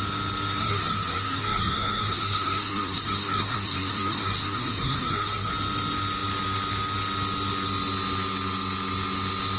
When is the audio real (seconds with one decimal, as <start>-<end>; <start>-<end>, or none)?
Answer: 0.0-0.6; 5.5-9.6